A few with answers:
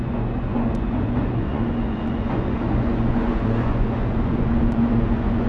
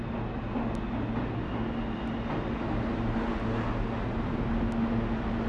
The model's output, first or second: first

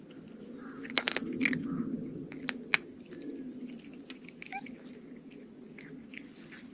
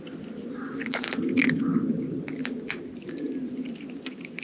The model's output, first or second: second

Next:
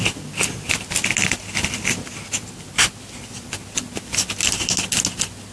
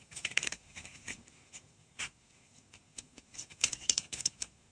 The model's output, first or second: second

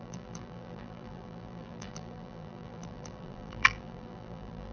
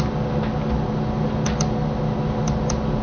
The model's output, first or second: first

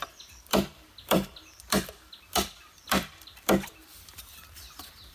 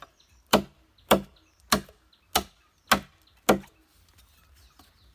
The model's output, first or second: first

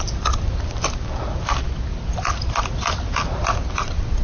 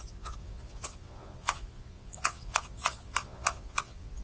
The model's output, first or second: second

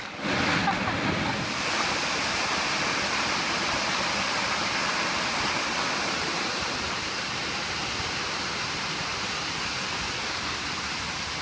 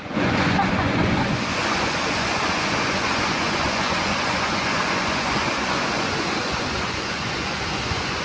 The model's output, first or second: second